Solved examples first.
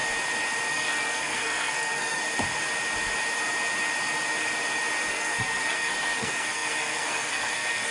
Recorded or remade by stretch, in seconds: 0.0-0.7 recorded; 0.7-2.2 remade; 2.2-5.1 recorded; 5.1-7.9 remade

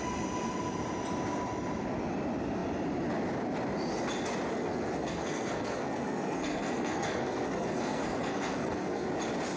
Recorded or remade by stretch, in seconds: 0.0-4.5 recorded; 4.5-9.1 remade; 9.1-9.6 recorded